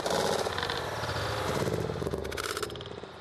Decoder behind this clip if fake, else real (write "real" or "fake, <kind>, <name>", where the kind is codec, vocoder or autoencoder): real